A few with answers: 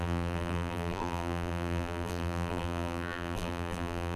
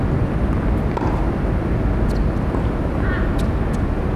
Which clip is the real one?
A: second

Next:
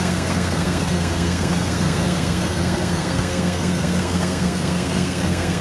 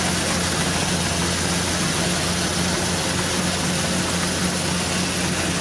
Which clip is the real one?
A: second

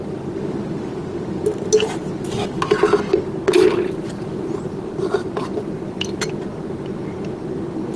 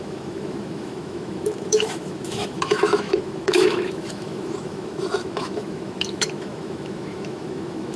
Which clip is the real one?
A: first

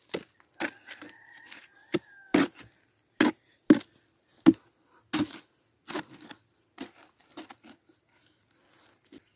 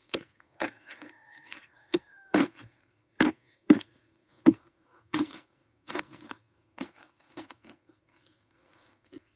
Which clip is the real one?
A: first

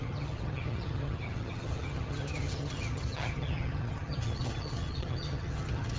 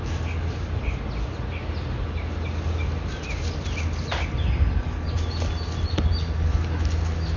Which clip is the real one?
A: second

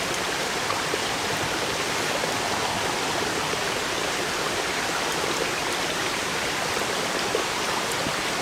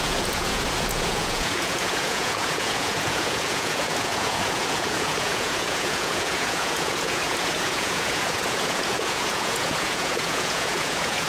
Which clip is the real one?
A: first